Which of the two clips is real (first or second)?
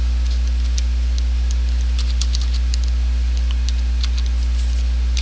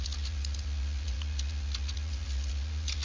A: first